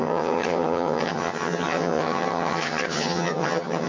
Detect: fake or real fake